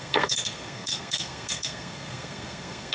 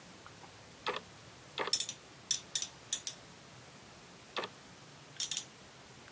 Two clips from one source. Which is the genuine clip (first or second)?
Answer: second